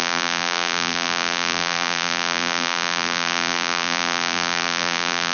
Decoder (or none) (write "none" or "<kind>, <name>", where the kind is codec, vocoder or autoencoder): vocoder, BigVGAN v2